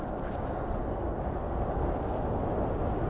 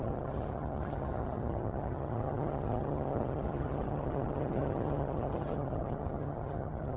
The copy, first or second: second